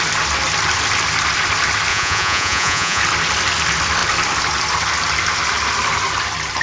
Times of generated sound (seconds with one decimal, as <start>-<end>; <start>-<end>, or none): 1.9-3.0